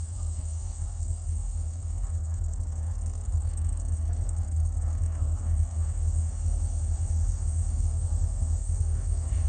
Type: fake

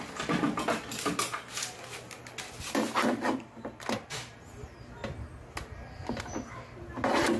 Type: real